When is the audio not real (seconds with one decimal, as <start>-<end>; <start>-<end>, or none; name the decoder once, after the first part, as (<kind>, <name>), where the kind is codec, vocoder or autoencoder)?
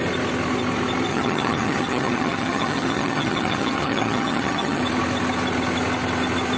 1.1-4.8 (vocoder, HiFi-GAN)